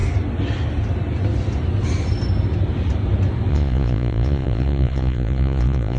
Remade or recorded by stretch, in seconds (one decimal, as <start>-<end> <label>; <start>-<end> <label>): 0.0-3.5 recorded; 3.5-6.0 remade